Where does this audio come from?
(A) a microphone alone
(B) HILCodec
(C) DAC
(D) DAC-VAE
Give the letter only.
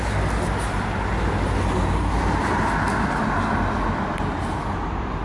A